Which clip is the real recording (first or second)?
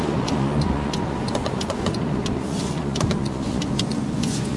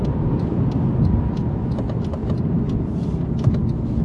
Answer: second